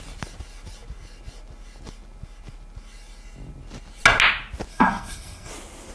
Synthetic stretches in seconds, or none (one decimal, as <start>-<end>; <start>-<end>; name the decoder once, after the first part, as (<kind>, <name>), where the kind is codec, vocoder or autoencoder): 4.7-5.5 (codec, SNAC)